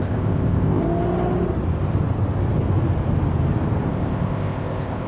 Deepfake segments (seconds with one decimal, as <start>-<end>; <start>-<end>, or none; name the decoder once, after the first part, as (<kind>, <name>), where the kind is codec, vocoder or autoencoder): 0.0-0.8 (codec, ZipCodec); 3.9-5.1